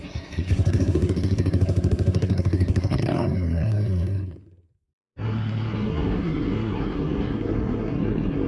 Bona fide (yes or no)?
no